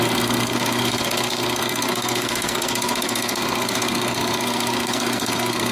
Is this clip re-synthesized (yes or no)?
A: yes